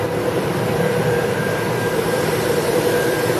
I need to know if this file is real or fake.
fake